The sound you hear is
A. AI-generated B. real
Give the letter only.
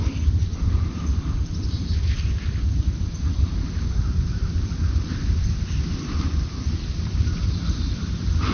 B